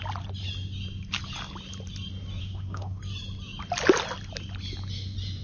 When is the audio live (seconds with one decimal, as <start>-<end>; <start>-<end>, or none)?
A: 0.0-2.4; 3.0-5.4